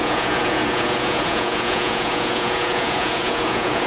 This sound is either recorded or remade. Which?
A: remade